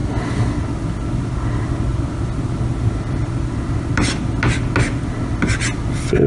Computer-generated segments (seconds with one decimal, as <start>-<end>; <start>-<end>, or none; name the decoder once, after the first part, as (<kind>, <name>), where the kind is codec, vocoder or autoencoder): none